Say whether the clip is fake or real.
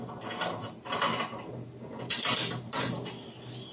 real